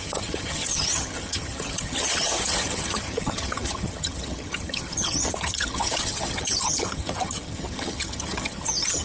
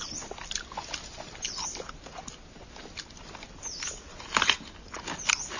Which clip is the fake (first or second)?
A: first